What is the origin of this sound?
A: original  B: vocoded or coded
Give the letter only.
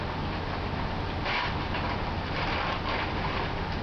A